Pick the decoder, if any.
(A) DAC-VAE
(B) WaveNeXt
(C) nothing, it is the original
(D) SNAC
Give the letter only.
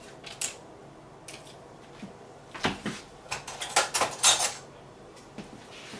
C